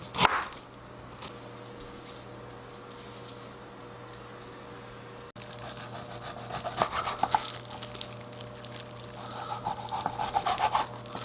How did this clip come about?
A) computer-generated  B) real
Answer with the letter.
B